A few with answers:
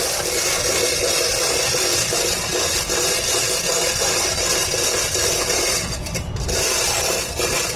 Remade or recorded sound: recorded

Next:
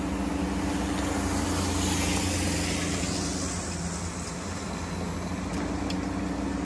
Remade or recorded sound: recorded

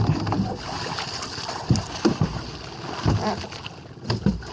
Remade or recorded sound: recorded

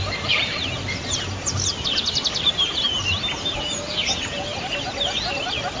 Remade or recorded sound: recorded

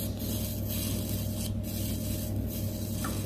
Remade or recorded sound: recorded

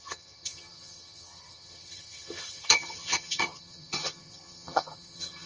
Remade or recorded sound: remade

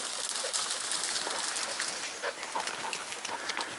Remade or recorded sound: recorded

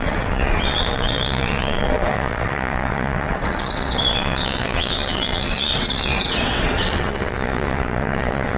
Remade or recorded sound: remade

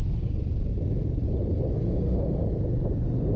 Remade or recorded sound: recorded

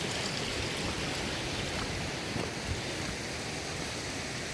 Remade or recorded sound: recorded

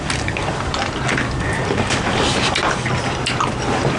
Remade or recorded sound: recorded